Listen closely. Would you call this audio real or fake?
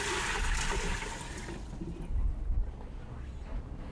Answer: real